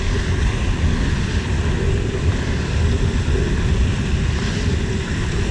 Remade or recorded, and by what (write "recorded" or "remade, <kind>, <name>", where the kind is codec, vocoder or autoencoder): recorded